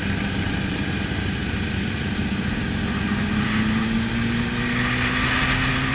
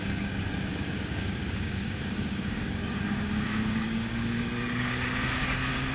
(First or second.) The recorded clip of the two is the first